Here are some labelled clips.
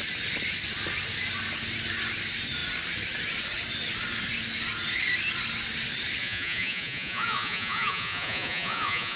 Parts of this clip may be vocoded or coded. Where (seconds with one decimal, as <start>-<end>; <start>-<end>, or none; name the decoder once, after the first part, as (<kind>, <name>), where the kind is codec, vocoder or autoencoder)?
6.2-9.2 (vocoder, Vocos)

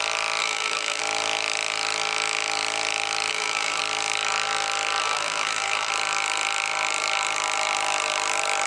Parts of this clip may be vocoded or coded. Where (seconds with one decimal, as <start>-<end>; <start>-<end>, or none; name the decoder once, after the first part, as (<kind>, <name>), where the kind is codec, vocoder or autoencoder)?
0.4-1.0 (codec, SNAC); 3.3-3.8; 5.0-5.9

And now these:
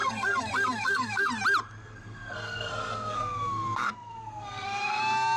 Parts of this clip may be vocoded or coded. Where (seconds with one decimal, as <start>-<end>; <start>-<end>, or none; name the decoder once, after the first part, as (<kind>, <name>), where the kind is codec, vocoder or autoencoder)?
0.0-1.3 (codec, SNAC); 1.8-5.0

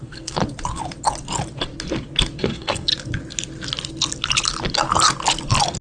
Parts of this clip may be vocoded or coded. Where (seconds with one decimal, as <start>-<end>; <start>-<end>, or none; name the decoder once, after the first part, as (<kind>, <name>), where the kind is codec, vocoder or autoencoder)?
0.0-0.4 (codec, SNAC); 2.4-2.9

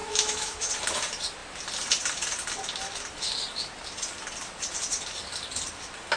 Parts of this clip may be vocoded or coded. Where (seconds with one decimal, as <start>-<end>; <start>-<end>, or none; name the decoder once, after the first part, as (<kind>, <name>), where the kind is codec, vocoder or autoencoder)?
0.0-0.7 (autoencoder, DAC-VAE)

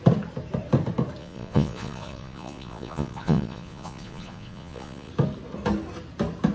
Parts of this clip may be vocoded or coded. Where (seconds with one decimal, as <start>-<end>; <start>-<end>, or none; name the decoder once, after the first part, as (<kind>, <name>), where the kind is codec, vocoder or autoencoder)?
1.2-5.1 (vocoder, Vocos)